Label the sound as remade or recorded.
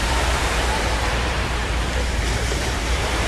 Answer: remade